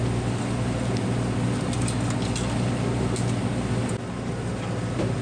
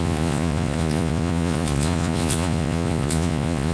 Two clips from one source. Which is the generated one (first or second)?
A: second